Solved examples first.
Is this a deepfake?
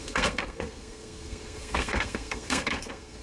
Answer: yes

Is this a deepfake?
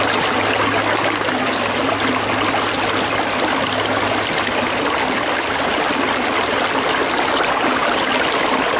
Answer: no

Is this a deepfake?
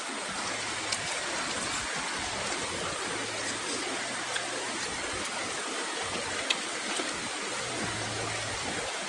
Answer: no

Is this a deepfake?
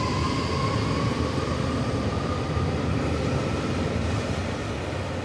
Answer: no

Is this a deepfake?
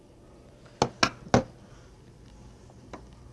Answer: no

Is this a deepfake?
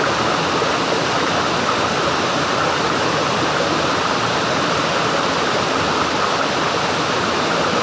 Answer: no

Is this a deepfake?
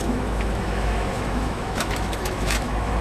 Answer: yes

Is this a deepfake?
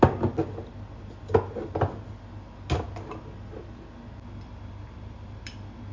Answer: no